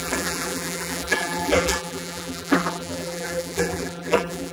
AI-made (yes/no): yes